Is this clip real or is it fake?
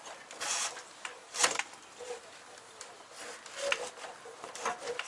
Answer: real